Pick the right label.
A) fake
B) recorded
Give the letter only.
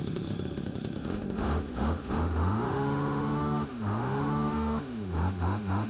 A